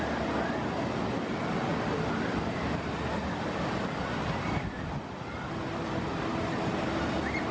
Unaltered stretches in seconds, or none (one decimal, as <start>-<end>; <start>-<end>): 0.0-1.7; 6.2-7.5